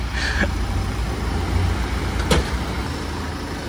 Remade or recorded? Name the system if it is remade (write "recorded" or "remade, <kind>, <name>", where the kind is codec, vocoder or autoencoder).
recorded